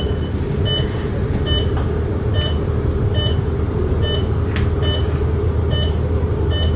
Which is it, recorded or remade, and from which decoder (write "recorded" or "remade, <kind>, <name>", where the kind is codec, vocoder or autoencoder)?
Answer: recorded